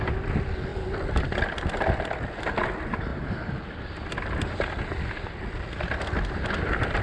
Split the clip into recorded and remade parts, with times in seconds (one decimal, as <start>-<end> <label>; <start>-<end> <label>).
0.0-7.0 recorded